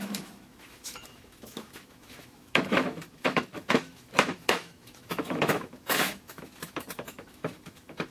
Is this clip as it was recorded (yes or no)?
no